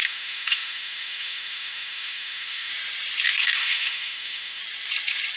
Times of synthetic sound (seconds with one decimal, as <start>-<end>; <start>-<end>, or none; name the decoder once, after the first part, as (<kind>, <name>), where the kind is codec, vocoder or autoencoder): 0.0-2.7 (autoencoder, DAC-VAE); 3.4-4.6